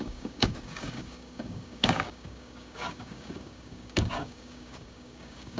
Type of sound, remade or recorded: remade